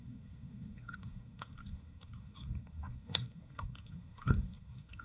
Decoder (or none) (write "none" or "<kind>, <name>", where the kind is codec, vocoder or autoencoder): codec, SNAC